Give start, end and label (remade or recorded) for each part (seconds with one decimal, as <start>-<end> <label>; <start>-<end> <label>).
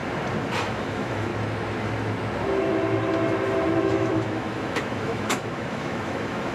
0.0-0.6 recorded; 0.6-1.3 remade; 1.3-3.8 recorded; 3.8-6.5 remade